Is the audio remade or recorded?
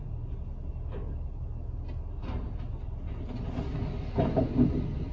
recorded